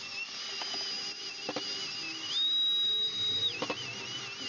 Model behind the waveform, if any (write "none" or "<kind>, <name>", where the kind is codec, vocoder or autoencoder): none